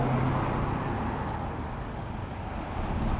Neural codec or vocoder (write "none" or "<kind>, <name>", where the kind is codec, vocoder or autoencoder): none